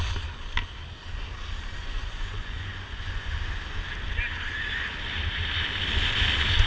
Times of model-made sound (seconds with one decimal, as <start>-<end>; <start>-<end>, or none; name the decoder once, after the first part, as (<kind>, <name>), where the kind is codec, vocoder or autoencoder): 1.8-3.4 (vocoder, Vocos)